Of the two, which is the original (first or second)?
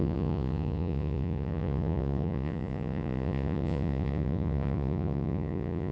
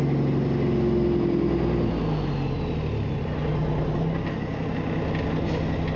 second